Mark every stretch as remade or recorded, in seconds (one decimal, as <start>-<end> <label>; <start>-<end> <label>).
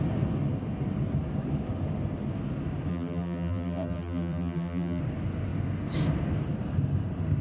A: 0.0-2.9 recorded; 2.9-5.0 remade; 5.0-7.4 recorded